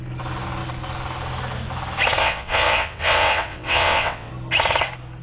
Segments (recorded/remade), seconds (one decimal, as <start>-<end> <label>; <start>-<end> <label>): 0.0-2.2 recorded; 2.2-4.3 remade; 4.3-5.2 recorded